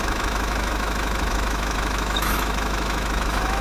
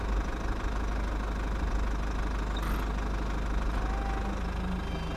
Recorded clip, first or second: second